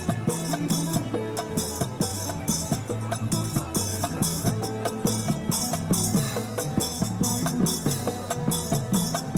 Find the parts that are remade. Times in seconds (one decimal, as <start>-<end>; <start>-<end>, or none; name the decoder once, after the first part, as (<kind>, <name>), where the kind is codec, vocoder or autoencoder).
2.1-2.8 (autoencoder, DAC-VAE); 3.9-4.5; 6.6-7.6